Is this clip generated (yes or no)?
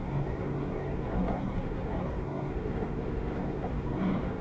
yes